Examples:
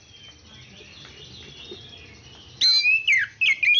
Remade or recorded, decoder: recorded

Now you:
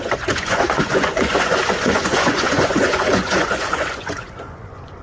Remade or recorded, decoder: remade, vocoder, Vocos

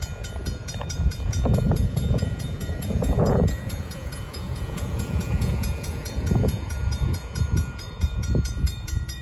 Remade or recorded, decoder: remade, vocoder, Vocos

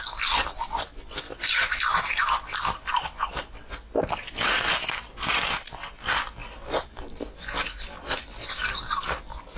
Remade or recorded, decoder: recorded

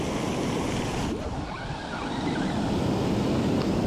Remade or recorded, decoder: recorded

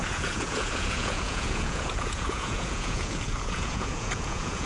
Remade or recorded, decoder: remade, vocoder, Vocos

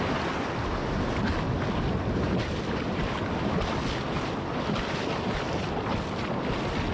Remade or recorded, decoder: recorded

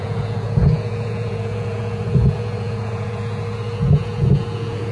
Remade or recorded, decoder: remade, vocoder, Vocos